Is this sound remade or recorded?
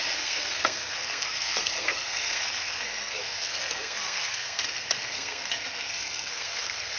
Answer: remade